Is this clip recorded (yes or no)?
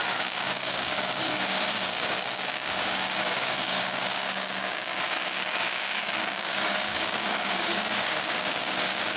no